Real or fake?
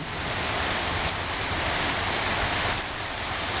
real